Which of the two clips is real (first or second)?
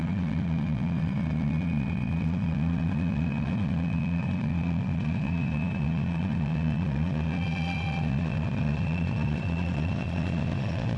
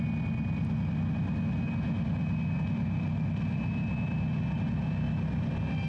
second